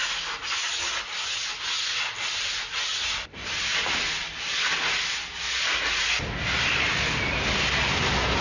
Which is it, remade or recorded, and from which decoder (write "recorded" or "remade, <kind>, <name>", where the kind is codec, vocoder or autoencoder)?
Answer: recorded